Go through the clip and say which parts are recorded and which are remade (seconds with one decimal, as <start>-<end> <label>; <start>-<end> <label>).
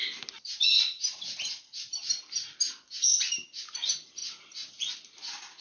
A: 0.0-5.6 recorded